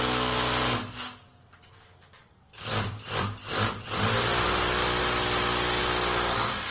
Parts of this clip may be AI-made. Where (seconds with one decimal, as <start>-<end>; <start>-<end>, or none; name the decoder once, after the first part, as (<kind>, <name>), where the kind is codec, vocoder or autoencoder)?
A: 1.3-5.0 (vocoder, BigVGAN v2); 5.8-6.7